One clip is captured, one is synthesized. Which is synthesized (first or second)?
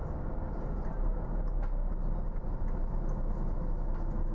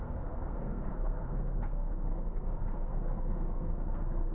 second